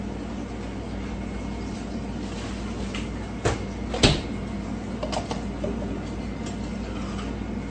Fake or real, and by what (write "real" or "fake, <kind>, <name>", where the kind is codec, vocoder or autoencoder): real